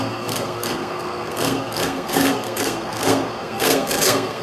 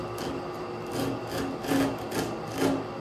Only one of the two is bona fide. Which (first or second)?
second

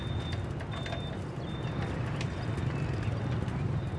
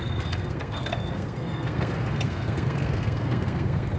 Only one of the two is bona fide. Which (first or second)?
first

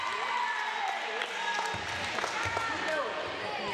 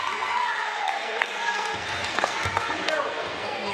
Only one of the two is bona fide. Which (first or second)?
first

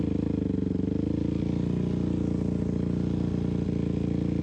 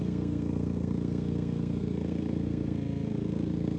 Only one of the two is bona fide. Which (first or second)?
first